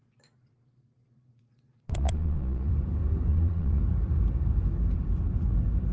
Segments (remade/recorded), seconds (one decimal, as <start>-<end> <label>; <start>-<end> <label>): 0.0-2.7 remade; 2.7-3.3 recorded; 3.3-3.8 remade; 3.8-5.9 recorded